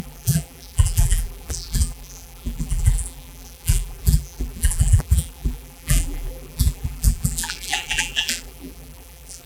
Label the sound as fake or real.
fake